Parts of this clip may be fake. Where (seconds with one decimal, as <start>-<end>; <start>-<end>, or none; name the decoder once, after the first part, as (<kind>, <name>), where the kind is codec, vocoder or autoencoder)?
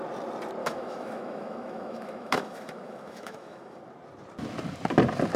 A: 0.6-3.8 (autoencoder, DAC-VAE)